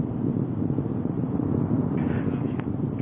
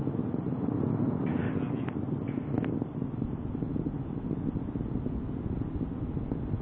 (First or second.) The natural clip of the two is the second